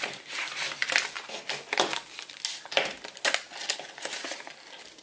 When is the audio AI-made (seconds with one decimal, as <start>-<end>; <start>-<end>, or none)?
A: none